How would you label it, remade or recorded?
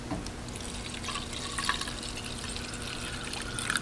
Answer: recorded